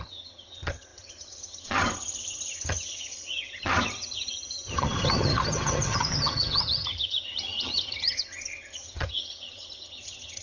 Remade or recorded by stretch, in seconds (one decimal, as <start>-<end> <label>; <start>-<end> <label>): 0.0-10.4 remade